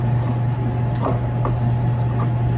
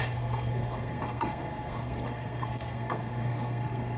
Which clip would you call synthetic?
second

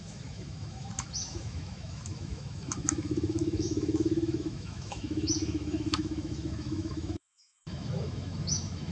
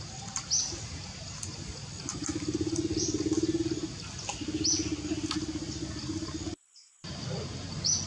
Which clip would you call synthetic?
first